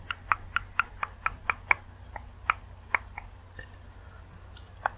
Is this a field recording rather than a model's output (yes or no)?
yes